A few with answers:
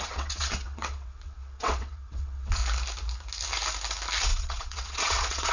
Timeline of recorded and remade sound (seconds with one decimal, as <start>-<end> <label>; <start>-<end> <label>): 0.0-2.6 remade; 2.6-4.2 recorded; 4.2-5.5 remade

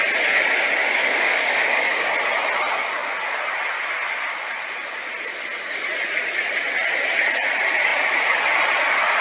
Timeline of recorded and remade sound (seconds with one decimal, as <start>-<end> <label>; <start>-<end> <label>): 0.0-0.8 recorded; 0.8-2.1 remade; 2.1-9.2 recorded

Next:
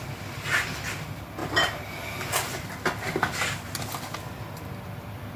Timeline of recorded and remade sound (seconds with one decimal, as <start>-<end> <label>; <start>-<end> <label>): 0.0-5.4 recorded

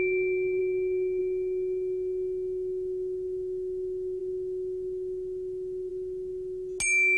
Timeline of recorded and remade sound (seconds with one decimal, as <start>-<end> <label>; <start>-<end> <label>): 0.0-7.2 recorded

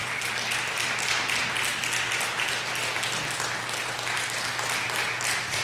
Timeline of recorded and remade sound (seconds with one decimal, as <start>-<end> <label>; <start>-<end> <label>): 0.0-5.6 recorded

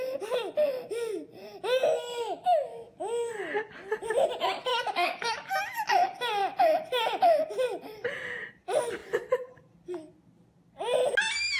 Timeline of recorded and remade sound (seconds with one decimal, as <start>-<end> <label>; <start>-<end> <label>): 0.0-1.8 recorded; 1.8-3.3 remade; 3.3-4.7 recorded; 4.7-5.5 remade; 5.5-11.6 recorded

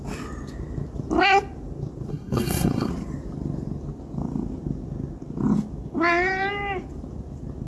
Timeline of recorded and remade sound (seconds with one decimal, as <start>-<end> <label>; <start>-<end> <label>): 0.0-2.1 recorded; 2.1-2.9 remade; 2.9-7.7 recorded